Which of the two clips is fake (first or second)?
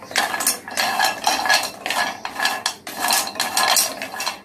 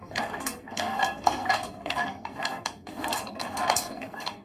second